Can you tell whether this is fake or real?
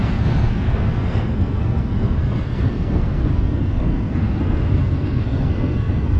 fake